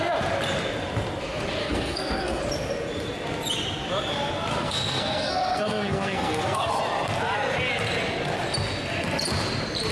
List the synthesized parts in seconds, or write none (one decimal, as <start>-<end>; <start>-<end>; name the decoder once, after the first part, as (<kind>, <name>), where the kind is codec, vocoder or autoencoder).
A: 1.6-2.4 (codec, SNAC); 4.5-6.7